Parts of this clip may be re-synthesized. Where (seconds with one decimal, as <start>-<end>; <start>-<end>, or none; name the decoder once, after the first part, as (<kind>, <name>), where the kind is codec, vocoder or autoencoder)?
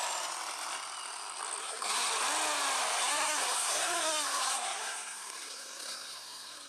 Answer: 1.6-2.1 (codec, SNAC); 3.0-6.7